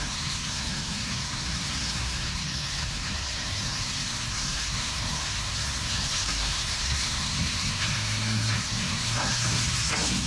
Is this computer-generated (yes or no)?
yes